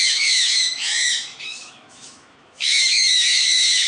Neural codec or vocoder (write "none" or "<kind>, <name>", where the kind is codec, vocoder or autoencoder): autoencoder, DAC-VAE